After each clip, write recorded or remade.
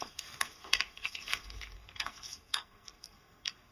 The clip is remade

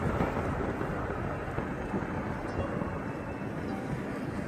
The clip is recorded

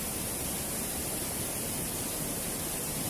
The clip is recorded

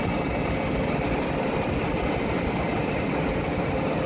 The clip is recorded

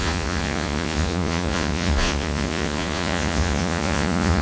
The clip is remade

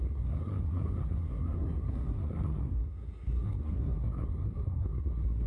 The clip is remade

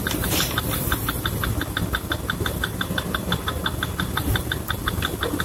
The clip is recorded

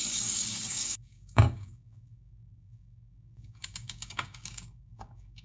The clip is remade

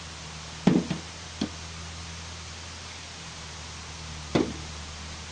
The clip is recorded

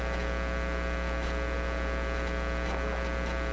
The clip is recorded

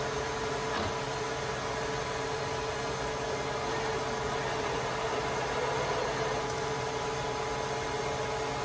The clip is recorded